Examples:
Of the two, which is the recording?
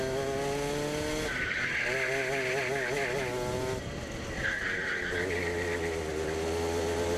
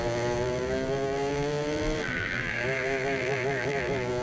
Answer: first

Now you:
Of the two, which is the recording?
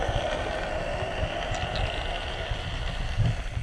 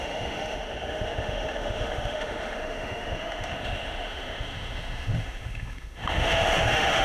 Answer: first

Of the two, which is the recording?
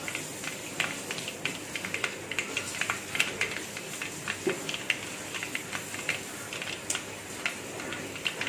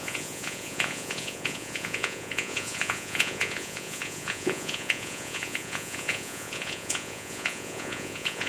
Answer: first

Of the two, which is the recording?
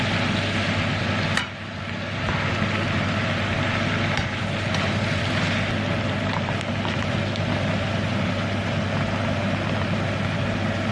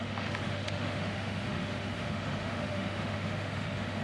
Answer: first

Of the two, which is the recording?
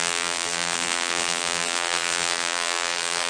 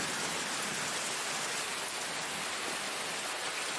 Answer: second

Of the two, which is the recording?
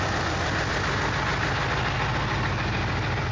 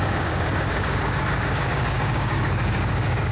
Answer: first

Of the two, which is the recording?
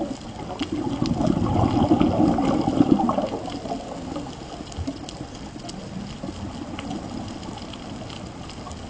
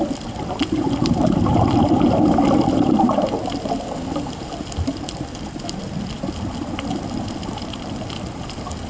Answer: first